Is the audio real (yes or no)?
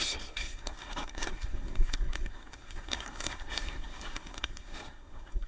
no